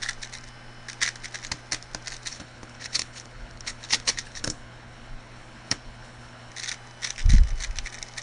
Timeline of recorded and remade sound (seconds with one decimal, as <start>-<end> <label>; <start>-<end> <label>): 0.0-2.3 recorded; 2.3-6.5 remade; 6.5-8.2 recorded